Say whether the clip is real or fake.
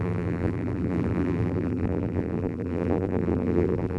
fake